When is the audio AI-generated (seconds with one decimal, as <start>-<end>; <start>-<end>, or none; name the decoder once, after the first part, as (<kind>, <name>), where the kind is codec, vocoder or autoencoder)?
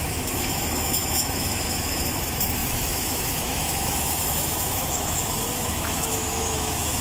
0.0-7.0 (autoencoder, DAC-VAE)